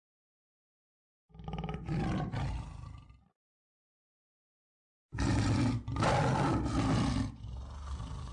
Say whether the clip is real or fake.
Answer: real